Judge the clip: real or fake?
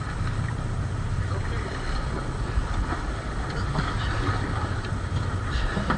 real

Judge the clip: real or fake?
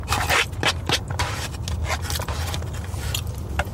real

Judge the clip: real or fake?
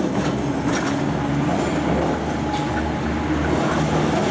real